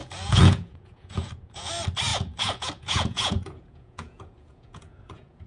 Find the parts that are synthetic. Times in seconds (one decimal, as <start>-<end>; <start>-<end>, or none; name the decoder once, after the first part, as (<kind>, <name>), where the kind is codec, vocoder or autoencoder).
0.0-1.7 (vocoder, Vocos); 2.1-5.5